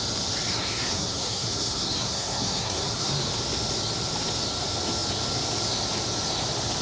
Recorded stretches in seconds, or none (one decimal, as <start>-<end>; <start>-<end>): 0.0-0.5; 3.1-6.8